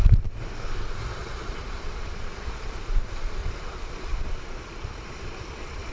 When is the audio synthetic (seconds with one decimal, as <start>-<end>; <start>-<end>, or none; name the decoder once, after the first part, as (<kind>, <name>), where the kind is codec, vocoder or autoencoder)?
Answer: 1.0-2.8 (vocoder, Vocos); 3.4-5.9